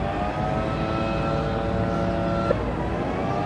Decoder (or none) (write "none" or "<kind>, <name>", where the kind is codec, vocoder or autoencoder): none